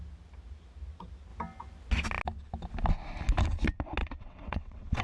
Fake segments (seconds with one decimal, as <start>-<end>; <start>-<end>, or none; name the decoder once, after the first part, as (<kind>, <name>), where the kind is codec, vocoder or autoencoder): 4.0-5.0 (vocoder, WaveNeXt)